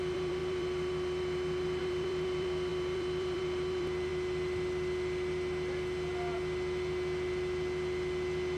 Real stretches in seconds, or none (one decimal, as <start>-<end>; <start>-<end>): 4.1-8.6